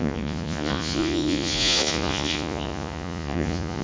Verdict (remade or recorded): remade